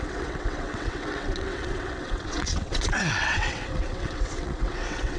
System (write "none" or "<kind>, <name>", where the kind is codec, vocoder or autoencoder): vocoder, WaveNeXt